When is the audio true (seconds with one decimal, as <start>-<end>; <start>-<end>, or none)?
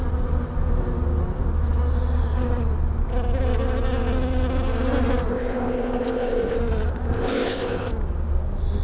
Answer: 0.0-5.3; 6.6-7.1; 7.9-8.8